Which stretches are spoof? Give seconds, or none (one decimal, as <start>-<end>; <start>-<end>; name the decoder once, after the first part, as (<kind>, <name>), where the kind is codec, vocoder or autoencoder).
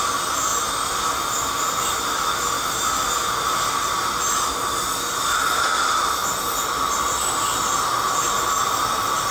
none